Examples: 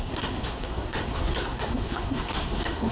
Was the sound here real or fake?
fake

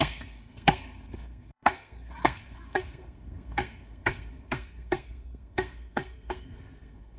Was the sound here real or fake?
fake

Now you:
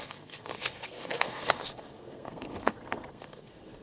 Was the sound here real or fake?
fake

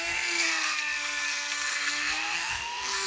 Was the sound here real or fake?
fake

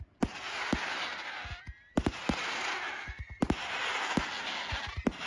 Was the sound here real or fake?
real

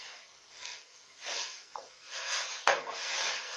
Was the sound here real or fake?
fake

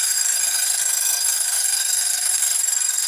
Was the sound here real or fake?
fake